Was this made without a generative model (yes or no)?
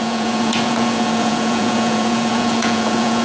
no